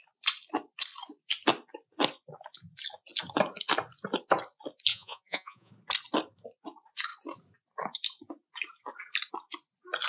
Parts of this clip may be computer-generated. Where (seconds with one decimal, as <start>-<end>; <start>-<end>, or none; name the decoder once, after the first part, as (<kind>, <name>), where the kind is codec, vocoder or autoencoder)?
4.9-5.7 (vocoder, Vocos)